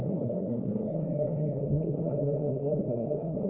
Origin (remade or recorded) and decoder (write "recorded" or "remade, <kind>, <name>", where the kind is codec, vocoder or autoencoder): remade, codec, SNAC